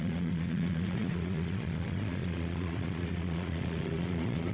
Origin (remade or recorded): remade